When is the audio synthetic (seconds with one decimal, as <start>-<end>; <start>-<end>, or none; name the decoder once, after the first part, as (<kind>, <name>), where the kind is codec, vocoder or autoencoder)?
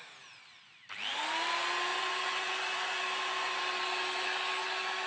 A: 1.9-3.6 (vocoder, Vocos)